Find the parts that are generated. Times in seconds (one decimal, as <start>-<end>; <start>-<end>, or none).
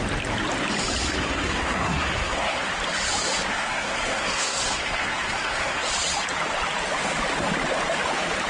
1.2-2.7; 3.5-5.9